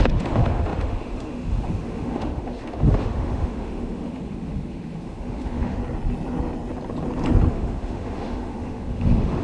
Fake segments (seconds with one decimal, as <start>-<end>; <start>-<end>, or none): 0.0-5.8; 7.5-9.4